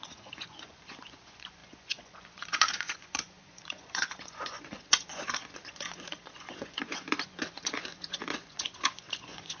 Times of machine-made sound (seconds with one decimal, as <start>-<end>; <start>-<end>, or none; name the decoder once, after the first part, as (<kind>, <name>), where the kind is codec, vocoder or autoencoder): 0.0-9.6 (vocoder, Vocos)